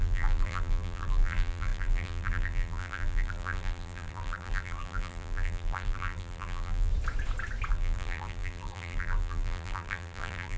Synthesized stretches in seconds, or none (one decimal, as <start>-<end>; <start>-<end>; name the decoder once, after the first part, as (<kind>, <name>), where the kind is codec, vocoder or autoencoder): 0.0-6.9 (vocoder, BigVGAN v2); 7.7-10.6

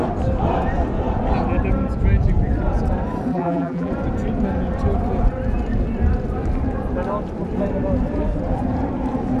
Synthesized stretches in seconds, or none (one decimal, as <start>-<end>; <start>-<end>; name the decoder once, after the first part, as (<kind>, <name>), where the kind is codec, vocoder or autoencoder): 3.3-3.9 (vocoder, BigVGAN v2)

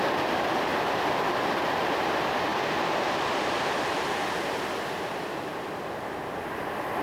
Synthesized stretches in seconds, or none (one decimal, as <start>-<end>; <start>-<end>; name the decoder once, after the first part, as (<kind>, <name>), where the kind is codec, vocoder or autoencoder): none

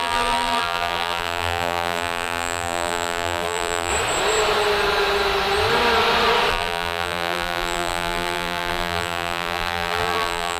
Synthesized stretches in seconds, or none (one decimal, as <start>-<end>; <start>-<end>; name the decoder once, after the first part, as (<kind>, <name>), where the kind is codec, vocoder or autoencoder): 0.0-3.9 (vocoder, BigVGAN v2); 6.5-10.6

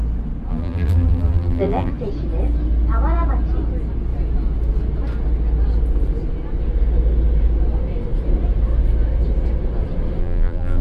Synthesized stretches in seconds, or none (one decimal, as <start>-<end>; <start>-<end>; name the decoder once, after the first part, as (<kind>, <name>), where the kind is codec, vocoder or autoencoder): 0.5-1.9 (vocoder, BigVGAN v2); 10.2-10.8

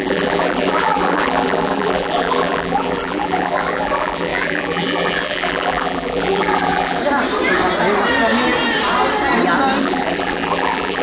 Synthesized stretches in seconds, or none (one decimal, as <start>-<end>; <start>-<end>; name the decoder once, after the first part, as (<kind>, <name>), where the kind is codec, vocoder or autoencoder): 0.0-7.0 (vocoder, BigVGAN v2); 9.8-11.0